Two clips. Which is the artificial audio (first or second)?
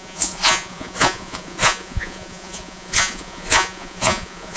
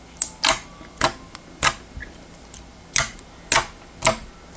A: first